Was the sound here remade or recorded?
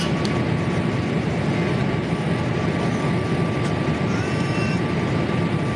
recorded